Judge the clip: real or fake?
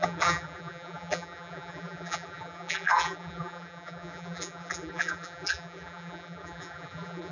fake